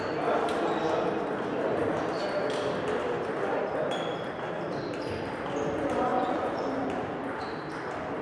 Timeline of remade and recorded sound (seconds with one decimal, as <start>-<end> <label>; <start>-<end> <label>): 0.0-6.1 recorded; 6.1-6.7 remade; 6.7-8.2 recorded